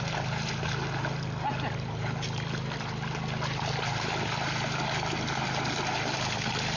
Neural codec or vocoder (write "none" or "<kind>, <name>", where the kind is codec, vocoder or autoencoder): none